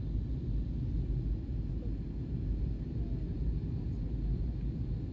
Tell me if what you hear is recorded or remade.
recorded